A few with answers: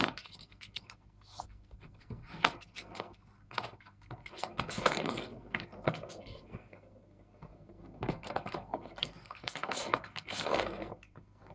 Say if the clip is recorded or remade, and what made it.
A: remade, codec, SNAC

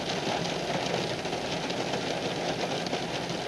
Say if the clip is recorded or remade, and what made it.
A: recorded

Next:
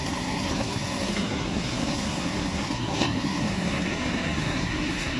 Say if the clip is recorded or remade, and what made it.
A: remade, codec, SNAC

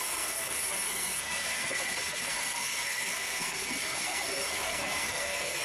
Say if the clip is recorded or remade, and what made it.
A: remade, codec, SNAC